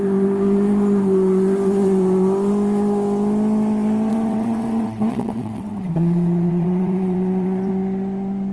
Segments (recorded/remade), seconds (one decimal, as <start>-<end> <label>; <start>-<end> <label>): 0.0-4.1 recorded; 4.1-7.7 remade; 7.7-8.5 recorded